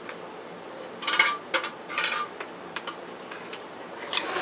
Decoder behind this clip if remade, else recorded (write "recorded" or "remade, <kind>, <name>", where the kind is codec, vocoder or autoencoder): remade, vocoder, BigVGAN v2